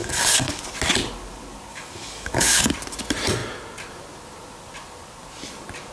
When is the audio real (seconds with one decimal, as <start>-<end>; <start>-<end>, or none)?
0.6-1.7; 2.6-5.9